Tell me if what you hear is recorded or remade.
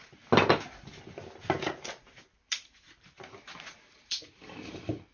recorded